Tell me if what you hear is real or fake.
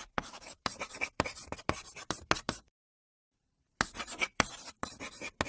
fake